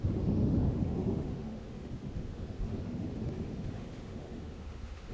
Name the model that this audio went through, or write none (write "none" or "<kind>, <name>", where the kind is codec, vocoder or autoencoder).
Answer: autoencoder, DAC-VAE